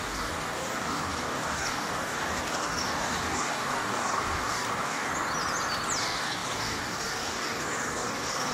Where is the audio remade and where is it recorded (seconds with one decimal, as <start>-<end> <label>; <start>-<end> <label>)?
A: 0.0-5.1 remade; 5.1-6.0 recorded; 6.0-8.5 remade